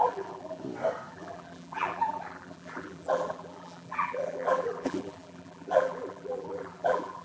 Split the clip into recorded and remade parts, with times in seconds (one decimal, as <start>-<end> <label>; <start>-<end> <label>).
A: 0.0-0.6 remade; 0.6-1.1 recorded; 1.1-7.2 remade